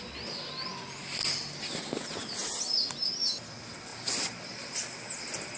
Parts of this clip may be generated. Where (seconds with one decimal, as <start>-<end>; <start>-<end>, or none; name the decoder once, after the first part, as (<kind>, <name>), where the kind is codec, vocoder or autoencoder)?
none